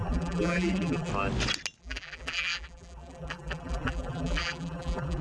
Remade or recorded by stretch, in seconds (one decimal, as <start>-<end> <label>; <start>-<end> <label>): 0.0-1.1 remade; 1.1-1.8 recorded; 1.8-5.2 remade